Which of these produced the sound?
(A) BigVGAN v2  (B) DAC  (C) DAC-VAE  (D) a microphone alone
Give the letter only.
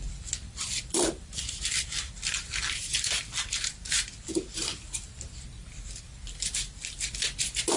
A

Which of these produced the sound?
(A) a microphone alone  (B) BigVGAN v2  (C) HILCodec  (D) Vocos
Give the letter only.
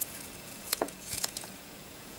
D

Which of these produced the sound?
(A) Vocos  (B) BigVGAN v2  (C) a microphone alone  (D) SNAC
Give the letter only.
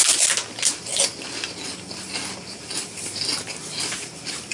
C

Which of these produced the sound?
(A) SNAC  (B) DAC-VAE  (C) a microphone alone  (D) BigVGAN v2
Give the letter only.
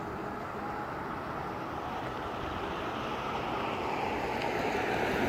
C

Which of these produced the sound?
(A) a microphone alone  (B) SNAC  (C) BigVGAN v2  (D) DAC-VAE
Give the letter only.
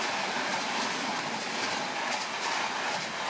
A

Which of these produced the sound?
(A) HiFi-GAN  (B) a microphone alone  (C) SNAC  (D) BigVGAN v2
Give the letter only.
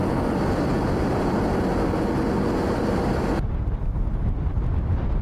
B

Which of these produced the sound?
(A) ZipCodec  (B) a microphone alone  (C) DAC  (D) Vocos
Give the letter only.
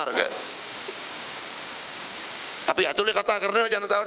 C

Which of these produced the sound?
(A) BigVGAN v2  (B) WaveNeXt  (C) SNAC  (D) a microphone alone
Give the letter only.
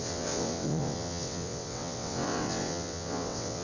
B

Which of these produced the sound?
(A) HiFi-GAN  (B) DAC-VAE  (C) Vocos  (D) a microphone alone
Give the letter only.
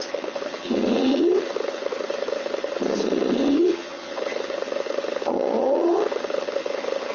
A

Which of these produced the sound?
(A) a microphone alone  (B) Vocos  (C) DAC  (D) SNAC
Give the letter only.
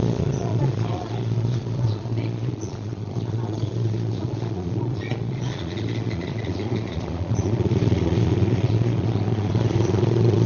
B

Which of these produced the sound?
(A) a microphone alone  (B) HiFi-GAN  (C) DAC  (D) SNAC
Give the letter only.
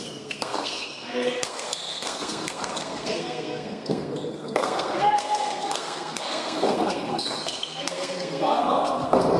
D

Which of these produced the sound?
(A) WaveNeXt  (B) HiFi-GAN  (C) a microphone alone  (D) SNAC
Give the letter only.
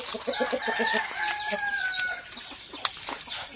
C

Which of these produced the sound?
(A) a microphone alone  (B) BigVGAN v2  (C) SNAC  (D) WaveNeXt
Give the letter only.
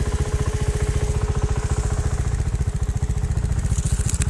A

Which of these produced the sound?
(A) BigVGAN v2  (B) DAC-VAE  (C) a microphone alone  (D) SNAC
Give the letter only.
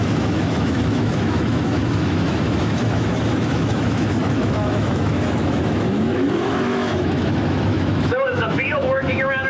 B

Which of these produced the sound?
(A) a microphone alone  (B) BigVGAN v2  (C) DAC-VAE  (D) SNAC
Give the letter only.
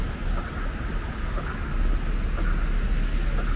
A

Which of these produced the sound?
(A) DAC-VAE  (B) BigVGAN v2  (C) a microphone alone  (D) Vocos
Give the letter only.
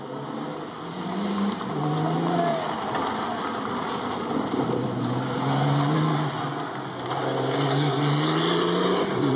C